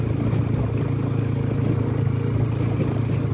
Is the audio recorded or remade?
recorded